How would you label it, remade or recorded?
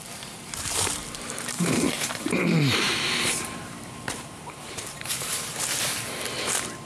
remade